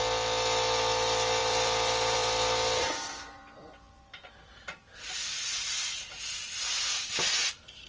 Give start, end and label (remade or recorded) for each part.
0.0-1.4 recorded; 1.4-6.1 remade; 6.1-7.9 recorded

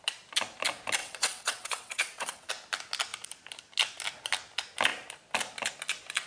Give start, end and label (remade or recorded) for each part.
0.0-1.0 recorded; 1.0-2.5 remade; 2.5-6.3 recorded

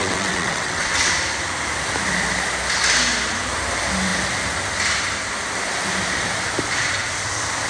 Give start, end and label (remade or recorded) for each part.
0.0-1.1 remade; 1.1-7.7 recorded

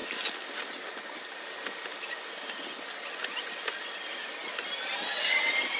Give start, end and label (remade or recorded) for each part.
0.0-5.8 recorded

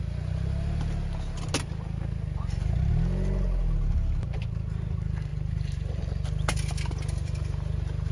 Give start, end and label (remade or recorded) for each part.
0.0-5.3 recorded; 5.3-6.0 remade; 6.0-8.1 recorded

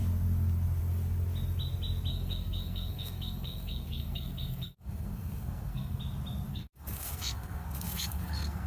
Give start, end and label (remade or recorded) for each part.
0.0-2.1 recorded; 2.1-6.0 remade; 6.0-6.5 recorded; 6.5-8.7 remade

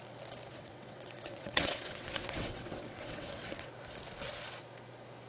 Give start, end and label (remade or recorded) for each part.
0.0-0.5 recorded; 0.5-3.7 remade; 3.7-5.3 recorded

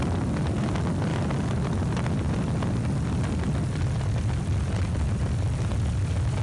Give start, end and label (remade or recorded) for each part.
0.0-6.4 recorded